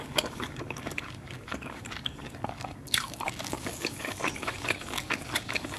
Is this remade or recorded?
remade